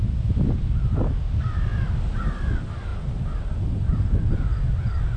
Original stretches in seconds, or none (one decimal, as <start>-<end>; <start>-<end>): 0.0-2.9; 4.6-5.2